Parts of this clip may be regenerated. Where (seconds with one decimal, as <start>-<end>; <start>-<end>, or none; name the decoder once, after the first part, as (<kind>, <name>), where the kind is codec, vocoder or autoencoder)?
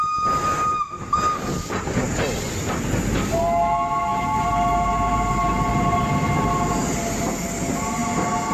none